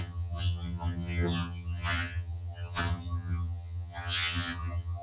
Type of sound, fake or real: fake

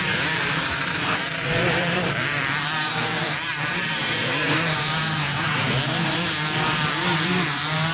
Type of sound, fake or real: fake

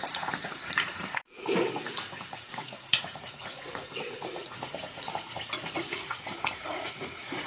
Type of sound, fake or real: fake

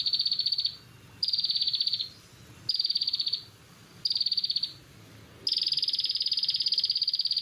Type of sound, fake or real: real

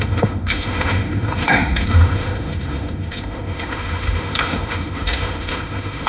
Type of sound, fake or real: fake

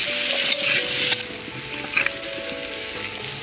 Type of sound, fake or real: real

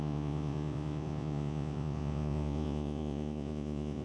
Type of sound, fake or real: fake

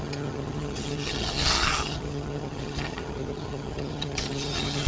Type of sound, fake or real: fake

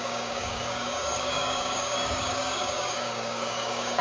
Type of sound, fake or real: fake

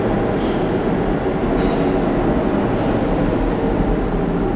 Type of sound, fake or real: real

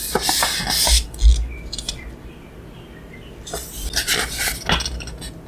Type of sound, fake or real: real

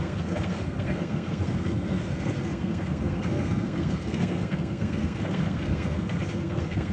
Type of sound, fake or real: fake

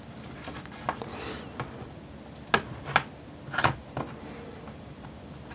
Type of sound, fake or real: real